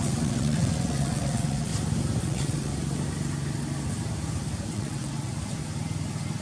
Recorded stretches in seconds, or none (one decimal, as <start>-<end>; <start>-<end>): 1.7-2.2; 2.7-4.7; 5.3-6.4